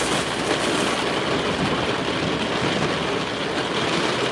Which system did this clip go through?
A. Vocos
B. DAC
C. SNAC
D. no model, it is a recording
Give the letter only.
D